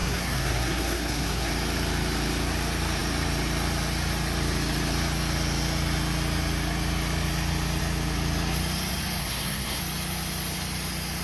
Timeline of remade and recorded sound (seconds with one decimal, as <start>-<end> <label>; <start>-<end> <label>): 0.0-1.5 remade; 1.5-9.2 recorded; 9.2-9.8 remade; 9.8-11.2 recorded